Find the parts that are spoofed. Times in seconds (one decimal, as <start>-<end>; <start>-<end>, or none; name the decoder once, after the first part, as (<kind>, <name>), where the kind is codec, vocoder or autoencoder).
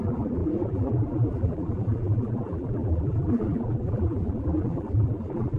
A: 0.0-5.6 (vocoder, BigVGAN v2)